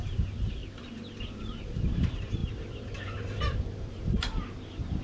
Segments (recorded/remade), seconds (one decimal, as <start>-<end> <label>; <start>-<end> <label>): 0.0-0.6 remade; 0.6-1.2 recorded; 1.2-5.0 remade